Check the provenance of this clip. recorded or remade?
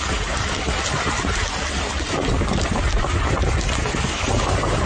recorded